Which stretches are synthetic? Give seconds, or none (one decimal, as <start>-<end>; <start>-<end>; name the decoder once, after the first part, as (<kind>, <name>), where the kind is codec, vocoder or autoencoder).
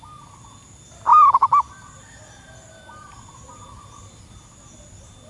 1.1-4.3 (vocoder, BigVGAN v2)